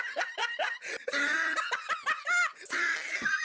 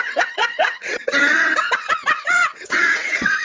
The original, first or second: first